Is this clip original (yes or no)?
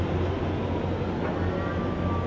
yes